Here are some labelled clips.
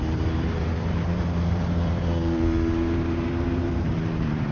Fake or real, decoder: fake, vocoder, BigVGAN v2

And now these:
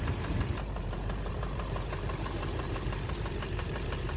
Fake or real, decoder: fake, vocoder, BigVGAN v2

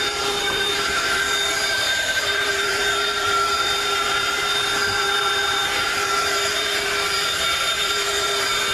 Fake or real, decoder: fake, vocoder, BigVGAN v2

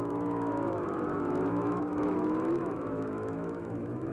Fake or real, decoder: fake, autoencoder, DAC-VAE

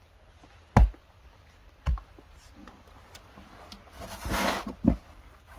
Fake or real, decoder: real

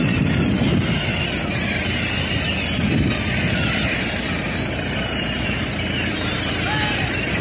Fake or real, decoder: real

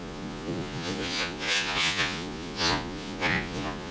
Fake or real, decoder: fake, vocoder, Vocos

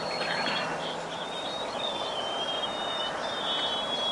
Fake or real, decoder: real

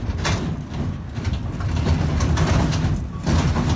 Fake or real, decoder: real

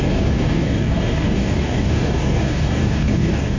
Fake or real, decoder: fake, codec, DAC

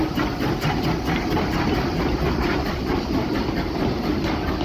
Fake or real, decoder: real